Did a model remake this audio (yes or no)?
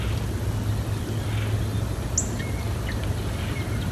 no